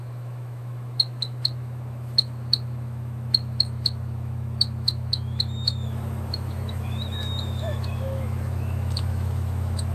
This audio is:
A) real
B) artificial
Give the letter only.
B